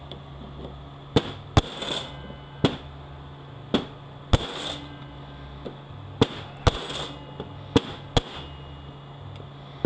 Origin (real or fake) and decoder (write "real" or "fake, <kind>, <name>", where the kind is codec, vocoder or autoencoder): real